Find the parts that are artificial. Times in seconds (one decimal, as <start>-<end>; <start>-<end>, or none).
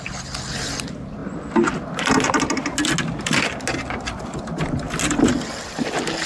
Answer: none